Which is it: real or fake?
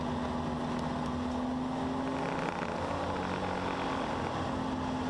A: real